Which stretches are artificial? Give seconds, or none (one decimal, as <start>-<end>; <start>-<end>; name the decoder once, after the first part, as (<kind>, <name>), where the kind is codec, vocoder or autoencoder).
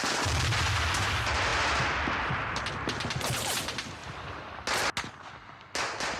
none